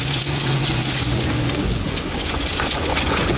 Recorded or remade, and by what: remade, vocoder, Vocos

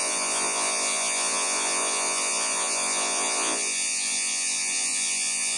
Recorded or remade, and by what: remade, vocoder, Vocos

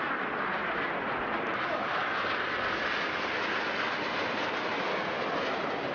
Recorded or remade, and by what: recorded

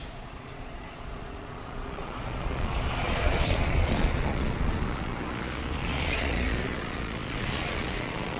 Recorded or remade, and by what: remade, vocoder, Vocos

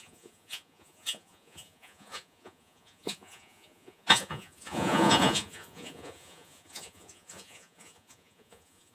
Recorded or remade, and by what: remade, vocoder, Vocos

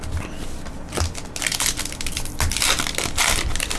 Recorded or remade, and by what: recorded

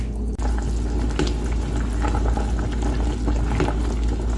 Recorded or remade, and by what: recorded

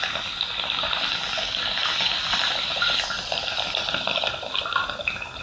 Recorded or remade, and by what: recorded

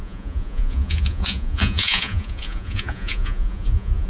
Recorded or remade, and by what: remade, vocoder, Vocos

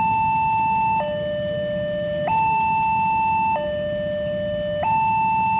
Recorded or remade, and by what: recorded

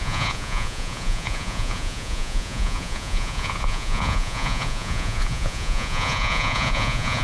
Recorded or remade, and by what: remade, vocoder, Vocos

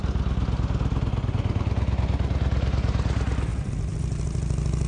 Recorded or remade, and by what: recorded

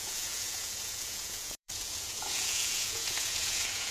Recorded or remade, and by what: remade, vocoder, Vocos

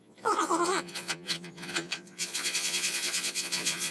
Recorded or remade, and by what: remade, vocoder, Vocos